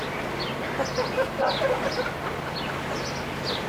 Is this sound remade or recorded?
recorded